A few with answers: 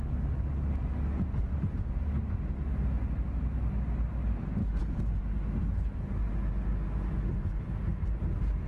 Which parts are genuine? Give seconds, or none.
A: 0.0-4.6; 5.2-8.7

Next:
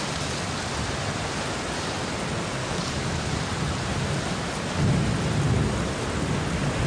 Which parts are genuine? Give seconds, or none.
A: 0.0-2.6; 3.3-6.9